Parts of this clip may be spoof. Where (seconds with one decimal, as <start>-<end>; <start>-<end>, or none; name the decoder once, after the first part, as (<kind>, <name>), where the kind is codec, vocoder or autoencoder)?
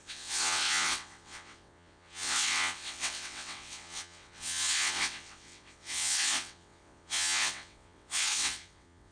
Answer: 0.0-9.1 (vocoder, WaveNeXt)